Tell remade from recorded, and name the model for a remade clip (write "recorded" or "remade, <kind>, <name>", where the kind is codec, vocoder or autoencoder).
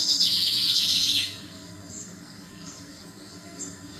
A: remade, codec, SNAC